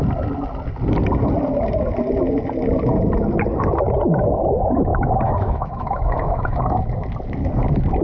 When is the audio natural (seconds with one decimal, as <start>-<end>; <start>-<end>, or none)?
0.0-4.9; 6.8-8.0